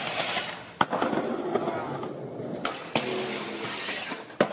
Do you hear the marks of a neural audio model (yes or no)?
no